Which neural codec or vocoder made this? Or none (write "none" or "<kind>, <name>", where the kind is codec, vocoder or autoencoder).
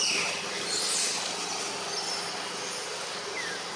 none